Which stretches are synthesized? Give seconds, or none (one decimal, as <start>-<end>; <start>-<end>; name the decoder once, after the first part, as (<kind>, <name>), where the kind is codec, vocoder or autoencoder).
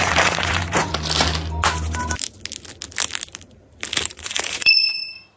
0.0-0.9 (vocoder, Vocos); 4.1-5.4